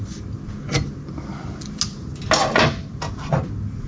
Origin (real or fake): real